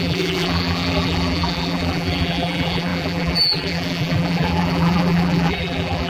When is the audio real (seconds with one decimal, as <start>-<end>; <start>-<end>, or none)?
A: none